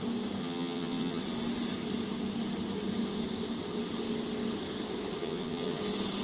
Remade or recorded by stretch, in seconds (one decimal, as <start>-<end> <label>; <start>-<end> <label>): 0.0-0.4 recorded; 0.4-1.2 remade; 1.2-5.2 recorded; 5.2-5.8 remade; 5.8-6.2 recorded